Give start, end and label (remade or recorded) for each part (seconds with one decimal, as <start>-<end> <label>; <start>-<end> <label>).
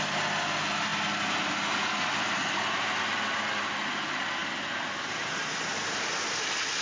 0.0-6.8 recorded